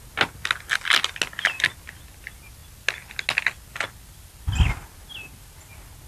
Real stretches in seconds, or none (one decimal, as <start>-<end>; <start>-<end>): 0.0-6.1